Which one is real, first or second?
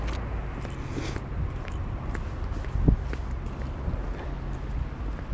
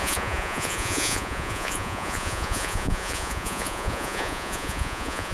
first